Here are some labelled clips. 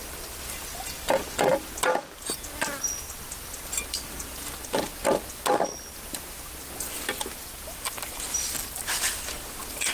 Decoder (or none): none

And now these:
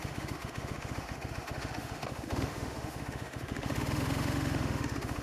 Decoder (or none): autoencoder, DAC-VAE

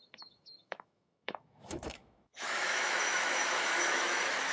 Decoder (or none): autoencoder, DAC-VAE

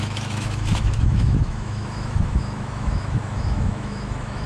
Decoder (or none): autoencoder, DAC-VAE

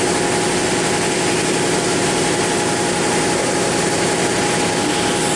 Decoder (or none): none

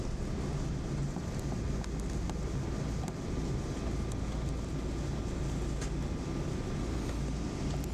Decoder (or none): none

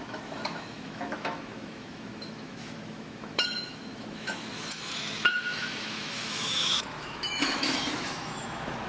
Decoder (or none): autoencoder, DAC-VAE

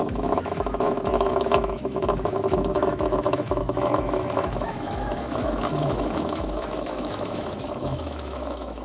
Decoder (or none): autoencoder, DAC-VAE